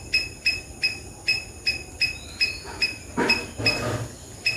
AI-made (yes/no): no